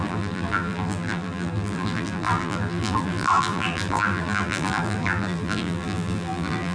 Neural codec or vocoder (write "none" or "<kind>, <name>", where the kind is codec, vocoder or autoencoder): vocoder, BigVGAN v2